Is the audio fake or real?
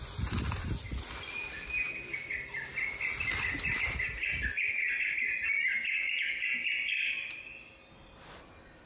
real